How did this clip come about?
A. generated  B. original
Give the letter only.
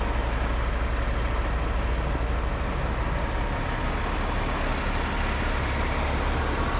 B